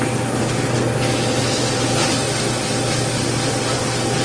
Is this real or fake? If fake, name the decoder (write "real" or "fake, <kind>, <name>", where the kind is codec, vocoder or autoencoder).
real